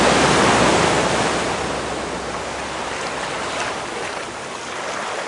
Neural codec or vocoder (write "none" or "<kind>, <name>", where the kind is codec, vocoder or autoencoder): none